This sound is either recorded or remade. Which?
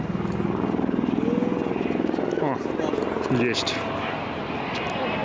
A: recorded